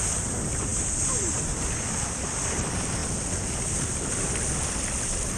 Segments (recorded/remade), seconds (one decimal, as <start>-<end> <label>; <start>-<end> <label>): 0.0-5.4 recorded